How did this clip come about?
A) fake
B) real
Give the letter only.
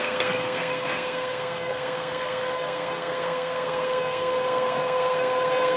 A